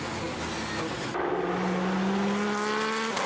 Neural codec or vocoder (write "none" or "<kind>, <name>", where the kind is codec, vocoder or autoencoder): none